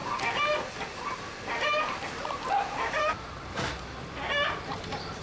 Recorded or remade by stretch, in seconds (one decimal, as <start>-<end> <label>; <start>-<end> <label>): 0.0-3.1 remade; 3.1-5.2 recorded